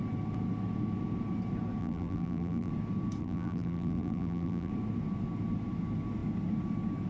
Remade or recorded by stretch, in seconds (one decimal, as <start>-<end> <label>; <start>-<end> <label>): 0.0-1.8 recorded; 1.8-2.7 remade; 2.7-3.2 recorded; 3.2-4.7 remade; 4.7-7.1 recorded